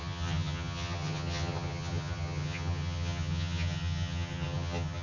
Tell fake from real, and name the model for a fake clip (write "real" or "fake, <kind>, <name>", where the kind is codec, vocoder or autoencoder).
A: fake, vocoder, HiFi-GAN